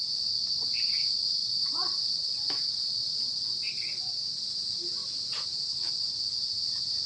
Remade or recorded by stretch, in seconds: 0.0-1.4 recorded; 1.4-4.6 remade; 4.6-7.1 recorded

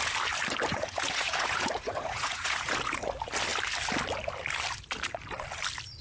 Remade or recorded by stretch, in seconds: 0.0-0.7 recorded; 0.7-2.7 remade; 2.7-6.0 recorded

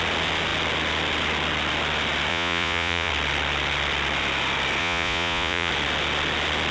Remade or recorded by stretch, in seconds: 0.0-2.3 recorded; 2.3-3.1 remade; 3.1-4.8 recorded; 4.8-5.7 remade; 5.7-6.7 recorded

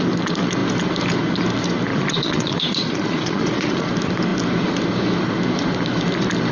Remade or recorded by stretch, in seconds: 0.0-1.9 recorded; 1.9-3.9 remade; 3.9-6.5 recorded

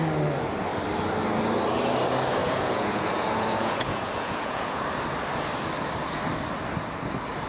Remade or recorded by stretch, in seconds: 0.0-2.4 recorded; 2.4-4.8 remade; 4.8-7.5 recorded

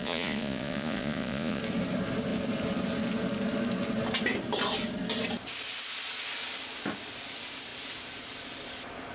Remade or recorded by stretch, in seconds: 0.0-1.6 remade; 1.6-9.1 recorded

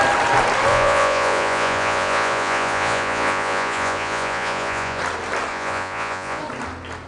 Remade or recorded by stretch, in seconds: 0.0-0.7 recorded; 0.7-5.0 remade; 5.0-5.5 recorded; 5.5-6.4 remade; 6.4-7.1 recorded

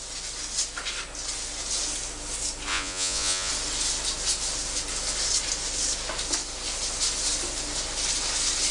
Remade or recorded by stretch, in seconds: 0.0-2.7 recorded; 2.7-3.5 remade; 3.5-8.7 recorded